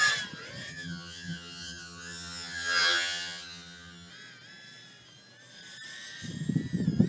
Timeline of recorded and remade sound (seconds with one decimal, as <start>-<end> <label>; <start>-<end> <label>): 0.0-0.7 recorded; 0.7-4.1 remade; 4.1-7.1 recorded